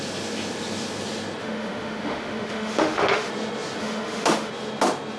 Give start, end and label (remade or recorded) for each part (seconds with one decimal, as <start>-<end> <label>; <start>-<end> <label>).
0.0-1.4 recorded; 1.4-3.3 remade; 3.3-3.8 recorded; 3.8-4.5 remade; 4.5-5.2 recorded